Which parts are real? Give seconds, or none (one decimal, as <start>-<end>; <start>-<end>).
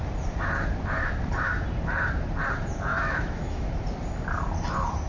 0.0-2.9; 3.7-5.1